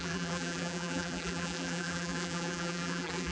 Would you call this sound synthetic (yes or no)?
yes